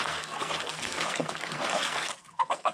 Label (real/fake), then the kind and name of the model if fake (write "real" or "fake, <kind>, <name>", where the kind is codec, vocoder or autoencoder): fake, codec, SNAC